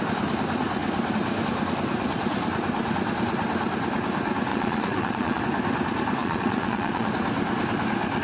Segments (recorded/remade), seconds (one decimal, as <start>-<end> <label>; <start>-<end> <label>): 0.0-4.5 recorded; 4.5-5.4 remade; 5.4-6.2 recorded; 6.2-7.1 remade; 7.1-8.2 recorded